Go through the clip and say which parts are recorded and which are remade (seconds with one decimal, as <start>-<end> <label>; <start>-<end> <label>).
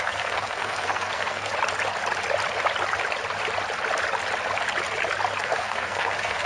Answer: 0.0-1.5 remade; 1.5-5.4 recorded; 5.4-6.5 remade